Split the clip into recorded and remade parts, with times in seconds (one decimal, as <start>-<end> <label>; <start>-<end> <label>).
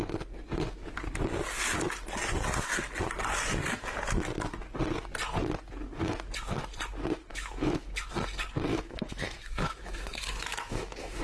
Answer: 0.0-7.3 recorded; 7.3-8.0 remade; 8.0-8.7 recorded; 8.7-11.2 remade